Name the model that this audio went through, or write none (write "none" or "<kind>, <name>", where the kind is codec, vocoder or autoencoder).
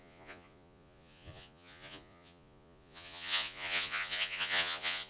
vocoder, Vocos